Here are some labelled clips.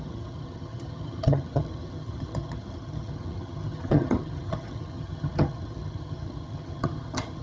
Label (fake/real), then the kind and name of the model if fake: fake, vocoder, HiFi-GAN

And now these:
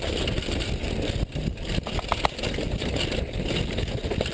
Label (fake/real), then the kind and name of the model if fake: real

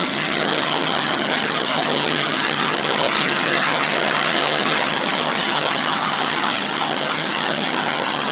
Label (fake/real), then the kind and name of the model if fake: fake, vocoder, HiFi-GAN